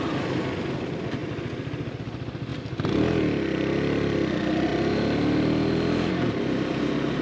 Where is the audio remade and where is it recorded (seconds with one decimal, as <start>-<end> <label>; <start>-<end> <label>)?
0.0-7.2 recorded